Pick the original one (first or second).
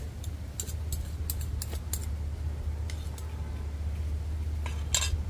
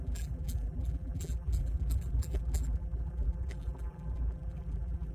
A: first